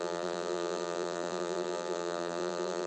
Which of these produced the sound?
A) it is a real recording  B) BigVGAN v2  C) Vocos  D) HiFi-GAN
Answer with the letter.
B